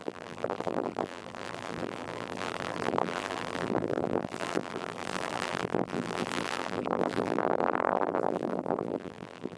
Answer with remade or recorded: remade